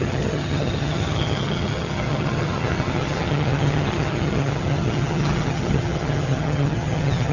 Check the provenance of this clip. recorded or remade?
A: remade